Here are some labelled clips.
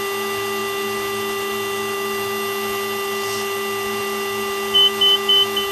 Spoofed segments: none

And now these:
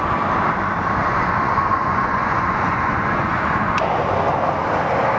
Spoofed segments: 1.0-3.8 (vocoder, Vocos)

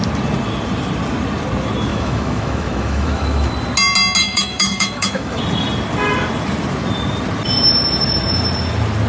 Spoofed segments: 1.9-3.5 (autoencoder, DAC-VAE); 4.2-5.4

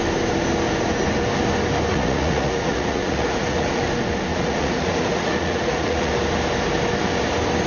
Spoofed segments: 1.9-3.8 (vocoder, Vocos); 4.3-6.1